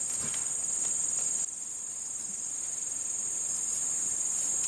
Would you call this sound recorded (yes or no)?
yes